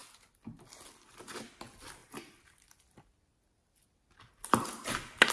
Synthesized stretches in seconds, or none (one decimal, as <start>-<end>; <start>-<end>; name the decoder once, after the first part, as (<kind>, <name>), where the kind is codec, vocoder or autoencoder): none